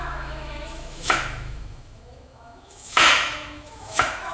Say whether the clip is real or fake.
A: fake